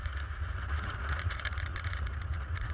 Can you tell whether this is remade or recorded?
remade